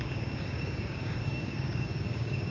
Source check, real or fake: fake